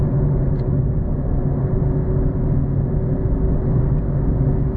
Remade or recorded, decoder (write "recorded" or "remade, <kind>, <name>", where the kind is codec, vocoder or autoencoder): recorded